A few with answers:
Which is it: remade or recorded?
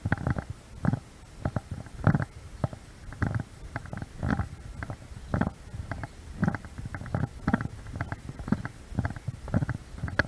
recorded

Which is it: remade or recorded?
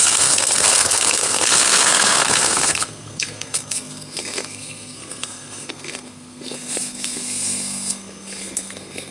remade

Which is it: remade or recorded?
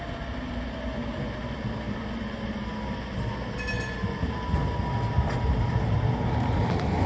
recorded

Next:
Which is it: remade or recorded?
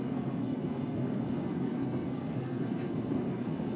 remade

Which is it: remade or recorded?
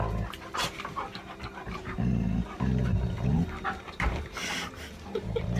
recorded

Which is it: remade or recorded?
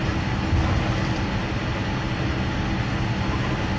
recorded